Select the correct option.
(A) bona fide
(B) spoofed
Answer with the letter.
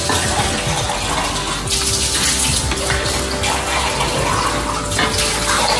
A